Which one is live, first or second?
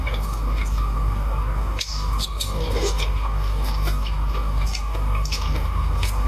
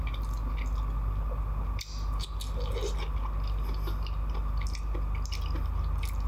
second